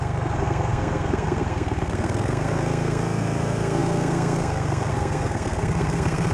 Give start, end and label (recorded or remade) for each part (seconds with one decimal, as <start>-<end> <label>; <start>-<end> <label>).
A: 0.0-6.3 remade